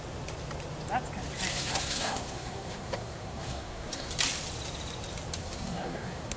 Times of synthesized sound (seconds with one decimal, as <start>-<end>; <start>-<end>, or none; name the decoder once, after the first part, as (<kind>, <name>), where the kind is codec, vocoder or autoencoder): 1.5-4.1 (codec, SNAC); 5.4-6.4

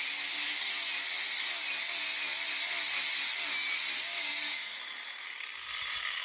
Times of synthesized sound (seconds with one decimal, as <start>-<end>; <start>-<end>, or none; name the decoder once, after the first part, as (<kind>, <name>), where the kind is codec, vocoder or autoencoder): 4.1-4.8 (codec, DAC)